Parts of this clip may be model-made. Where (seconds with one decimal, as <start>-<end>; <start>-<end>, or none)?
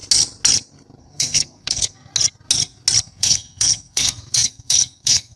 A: 1.0-2.1; 3.0-5.4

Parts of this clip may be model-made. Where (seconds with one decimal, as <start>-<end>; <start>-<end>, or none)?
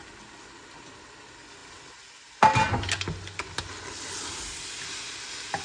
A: none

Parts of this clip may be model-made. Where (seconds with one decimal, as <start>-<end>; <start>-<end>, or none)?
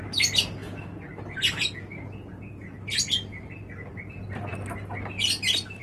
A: none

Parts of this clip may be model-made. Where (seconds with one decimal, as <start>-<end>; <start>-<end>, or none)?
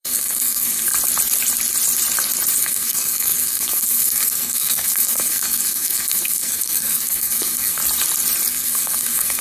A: 0.0-0.9; 2.6-7.8; 8.5-9.4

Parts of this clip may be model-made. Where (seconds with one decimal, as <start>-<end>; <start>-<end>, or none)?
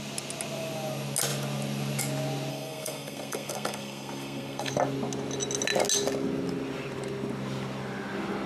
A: 2.5-4.7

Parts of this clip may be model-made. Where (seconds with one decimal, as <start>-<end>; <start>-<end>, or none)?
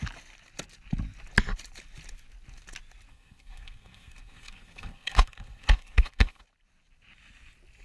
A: 3.1-6.4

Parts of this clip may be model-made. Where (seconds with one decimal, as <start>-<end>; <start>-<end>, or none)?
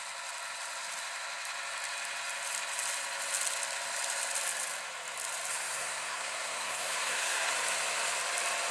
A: 5.5-7.5